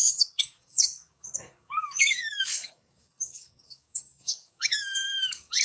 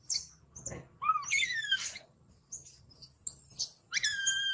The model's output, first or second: first